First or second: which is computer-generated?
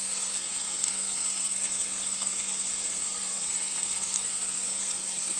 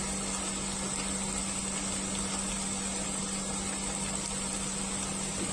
first